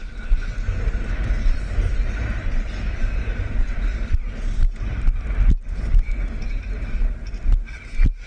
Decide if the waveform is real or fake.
real